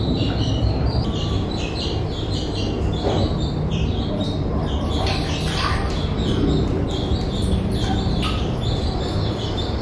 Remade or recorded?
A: remade